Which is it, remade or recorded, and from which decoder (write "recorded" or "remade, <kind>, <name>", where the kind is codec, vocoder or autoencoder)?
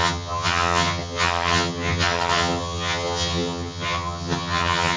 remade, vocoder, HiFi-GAN